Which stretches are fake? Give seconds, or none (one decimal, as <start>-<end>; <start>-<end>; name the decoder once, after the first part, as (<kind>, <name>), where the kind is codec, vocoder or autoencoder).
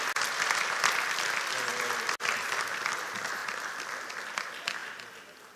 none